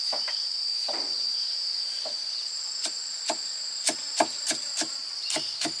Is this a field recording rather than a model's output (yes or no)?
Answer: yes